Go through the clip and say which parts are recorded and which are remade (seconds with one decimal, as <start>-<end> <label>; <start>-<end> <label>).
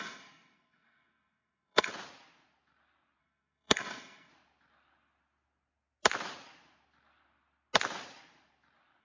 0.0-1.9 remade; 1.9-3.2 recorded; 3.2-4.3 remade; 4.3-9.0 recorded